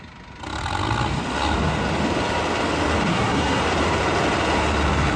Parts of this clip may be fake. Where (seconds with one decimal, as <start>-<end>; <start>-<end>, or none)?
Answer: 3.1-3.6